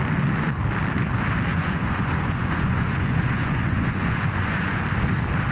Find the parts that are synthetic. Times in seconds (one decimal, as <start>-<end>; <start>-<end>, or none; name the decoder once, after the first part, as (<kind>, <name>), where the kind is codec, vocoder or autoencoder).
1.5-4.8 (vocoder, Vocos)